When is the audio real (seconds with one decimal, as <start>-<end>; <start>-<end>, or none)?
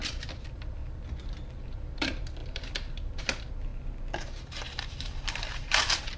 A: 0.8-1.7; 3.7-4.8